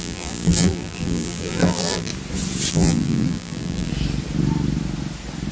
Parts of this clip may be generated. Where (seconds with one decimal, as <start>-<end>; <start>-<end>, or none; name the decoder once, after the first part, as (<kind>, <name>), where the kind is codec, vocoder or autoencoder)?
0.0-2.1 (vocoder, BigVGAN v2); 2.7-3.9